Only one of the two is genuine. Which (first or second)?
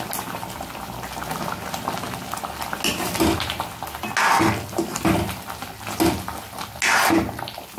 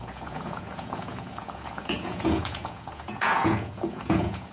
first